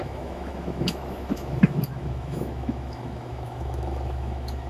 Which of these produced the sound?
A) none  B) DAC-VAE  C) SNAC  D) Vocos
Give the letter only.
B